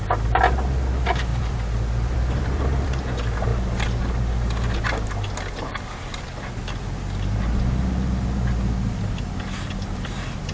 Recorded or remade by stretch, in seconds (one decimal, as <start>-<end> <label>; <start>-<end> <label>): 0.0-1.3 recorded; 1.3-3.0 remade; 3.0-10.5 recorded